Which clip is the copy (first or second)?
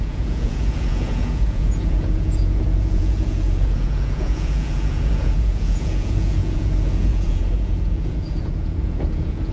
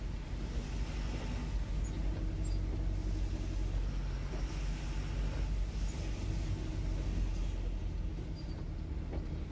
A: first